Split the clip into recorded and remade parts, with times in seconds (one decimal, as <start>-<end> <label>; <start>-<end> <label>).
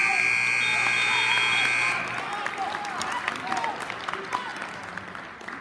0.0-5.6 recorded